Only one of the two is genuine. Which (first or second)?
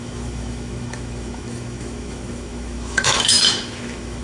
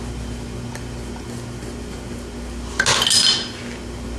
second